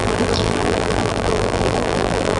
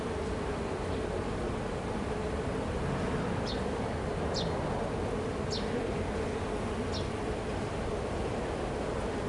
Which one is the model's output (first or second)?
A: first